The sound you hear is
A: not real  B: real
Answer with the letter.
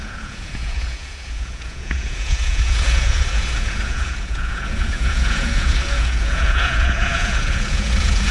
A